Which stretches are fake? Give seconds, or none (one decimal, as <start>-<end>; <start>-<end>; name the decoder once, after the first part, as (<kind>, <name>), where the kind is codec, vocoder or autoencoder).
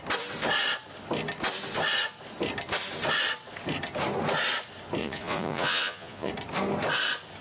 5.0-6.3 (vocoder, Vocos)